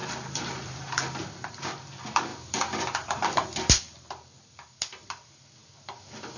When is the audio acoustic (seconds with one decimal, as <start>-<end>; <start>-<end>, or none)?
1.7-6.4